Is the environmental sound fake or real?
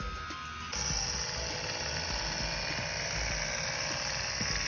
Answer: real